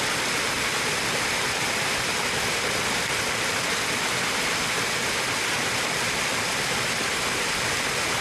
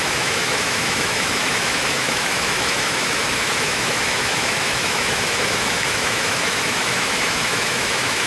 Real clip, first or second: first